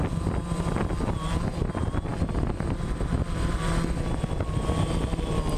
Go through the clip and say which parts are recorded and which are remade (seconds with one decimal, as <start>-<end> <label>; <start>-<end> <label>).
0.0-5.6 recorded